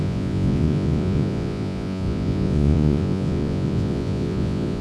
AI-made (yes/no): yes